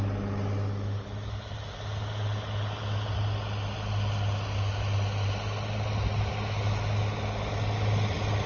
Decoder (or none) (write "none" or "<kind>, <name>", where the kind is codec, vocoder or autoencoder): none